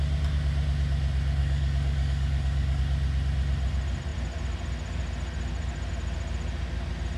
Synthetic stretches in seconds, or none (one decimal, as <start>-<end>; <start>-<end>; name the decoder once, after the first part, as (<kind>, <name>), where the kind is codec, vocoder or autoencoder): 1.4-2.8 (codec, DAC)